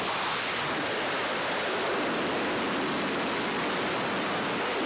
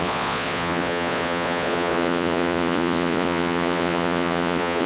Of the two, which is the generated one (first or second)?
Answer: second